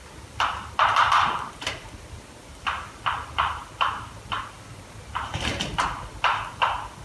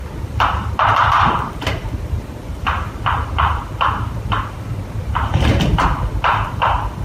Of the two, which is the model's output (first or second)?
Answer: second